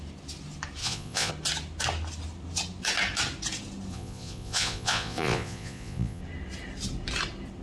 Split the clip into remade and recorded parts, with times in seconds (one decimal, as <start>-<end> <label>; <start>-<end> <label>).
0.0-0.8 recorded; 0.8-1.3 remade; 1.3-3.9 recorded; 3.9-6.2 remade; 6.2-7.6 recorded